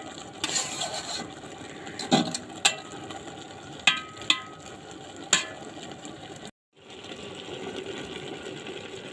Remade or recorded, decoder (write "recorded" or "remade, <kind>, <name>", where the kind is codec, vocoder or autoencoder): recorded